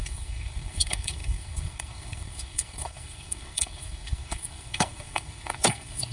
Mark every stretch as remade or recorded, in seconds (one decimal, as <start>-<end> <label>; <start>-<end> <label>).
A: 0.0-6.1 remade

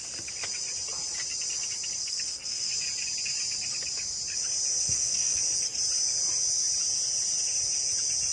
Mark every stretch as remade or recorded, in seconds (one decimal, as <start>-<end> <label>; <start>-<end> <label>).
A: 0.0-2.0 recorded; 2.0-2.7 remade; 2.7-4.8 recorded; 4.8-5.4 remade; 5.4-8.3 recorded

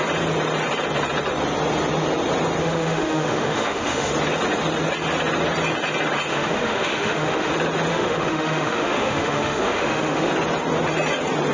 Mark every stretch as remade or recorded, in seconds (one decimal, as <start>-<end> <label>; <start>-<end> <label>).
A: 0.0-2.6 recorded; 2.6-4.1 remade; 4.1-6.3 recorded; 6.3-7.5 remade; 7.5-7.9 recorded; 7.9-10.3 remade; 10.3-11.5 recorded